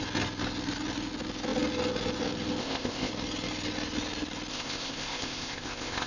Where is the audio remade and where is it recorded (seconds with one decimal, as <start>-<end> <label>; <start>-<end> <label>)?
0.0-2.6 recorded; 2.6-3.1 remade; 3.1-4.5 recorded; 4.5-6.1 remade